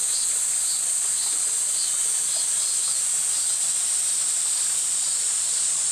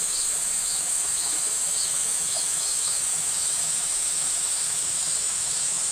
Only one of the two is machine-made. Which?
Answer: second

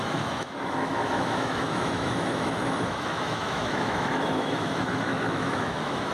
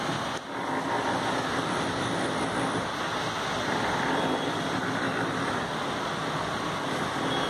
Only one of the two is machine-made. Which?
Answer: first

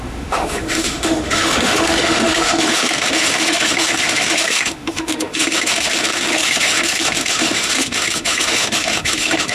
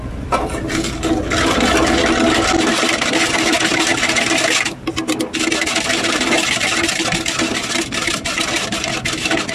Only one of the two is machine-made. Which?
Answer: first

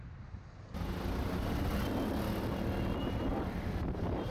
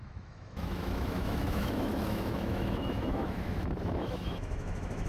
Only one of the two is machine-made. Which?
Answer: second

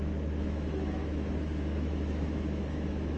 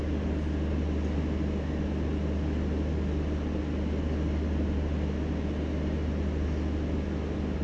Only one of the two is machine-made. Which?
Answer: first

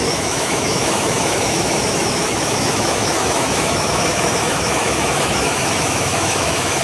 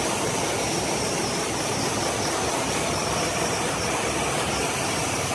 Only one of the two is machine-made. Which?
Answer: first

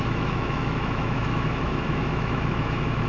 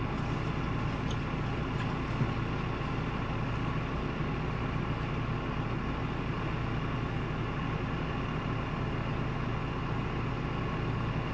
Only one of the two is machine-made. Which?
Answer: first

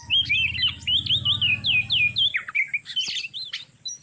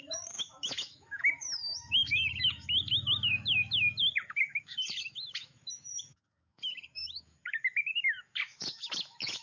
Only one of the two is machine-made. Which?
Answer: second